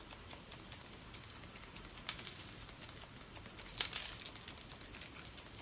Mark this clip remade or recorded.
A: recorded